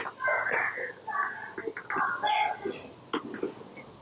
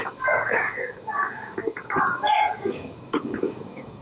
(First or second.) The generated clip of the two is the second